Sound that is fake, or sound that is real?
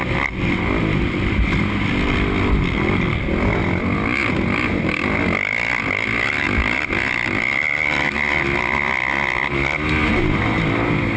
real